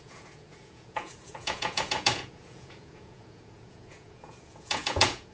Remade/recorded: remade